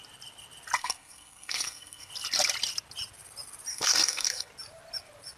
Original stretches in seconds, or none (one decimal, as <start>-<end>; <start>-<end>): 0.0-0.8; 2.1-3.7; 4.5-5.4